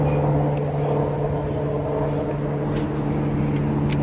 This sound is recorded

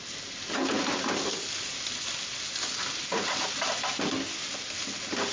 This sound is recorded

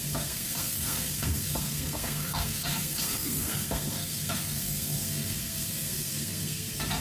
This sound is remade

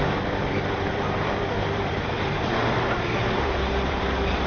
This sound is remade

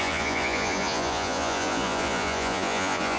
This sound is remade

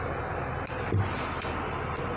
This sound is recorded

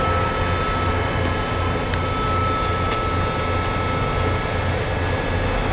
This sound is recorded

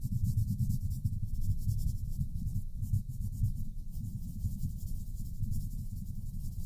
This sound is recorded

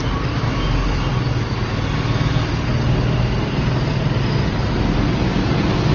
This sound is recorded